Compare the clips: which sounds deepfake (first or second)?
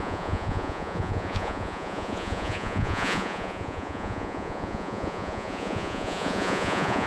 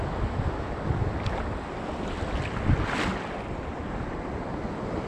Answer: first